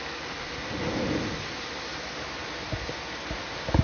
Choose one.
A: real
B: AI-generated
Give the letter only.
A